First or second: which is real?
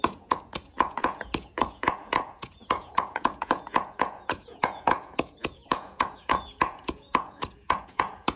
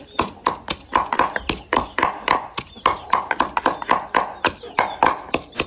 second